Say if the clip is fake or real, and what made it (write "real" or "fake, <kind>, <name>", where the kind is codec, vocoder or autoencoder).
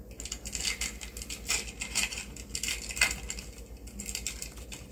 real